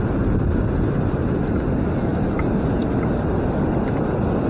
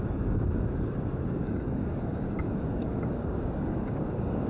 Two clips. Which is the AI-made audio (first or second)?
second